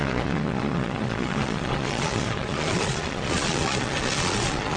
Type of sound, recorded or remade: remade